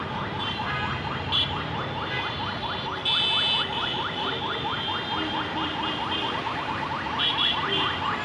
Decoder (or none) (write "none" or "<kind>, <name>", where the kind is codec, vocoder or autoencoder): none